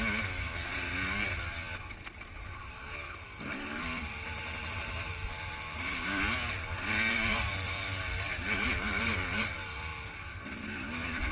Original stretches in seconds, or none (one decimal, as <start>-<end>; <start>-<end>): 0.0-2.1; 6.1-7.1